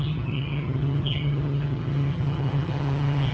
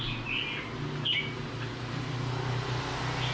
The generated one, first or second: first